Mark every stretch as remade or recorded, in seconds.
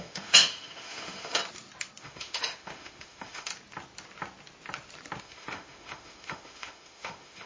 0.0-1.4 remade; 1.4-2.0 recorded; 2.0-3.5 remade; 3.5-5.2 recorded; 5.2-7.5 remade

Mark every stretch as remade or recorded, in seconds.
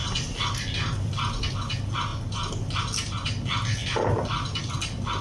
0.0-5.2 recorded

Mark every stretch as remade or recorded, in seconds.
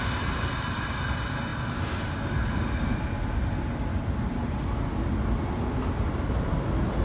0.0-7.0 recorded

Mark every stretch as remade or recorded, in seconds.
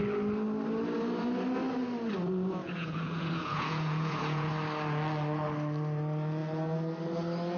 0.0-2.6 recorded; 2.6-4.5 remade; 4.5-7.6 recorded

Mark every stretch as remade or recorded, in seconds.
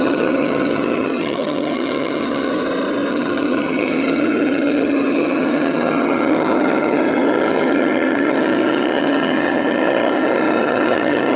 0.0-2.5 remade; 2.5-3.1 recorded; 3.1-11.4 remade